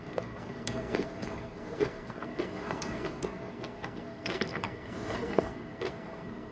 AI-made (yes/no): yes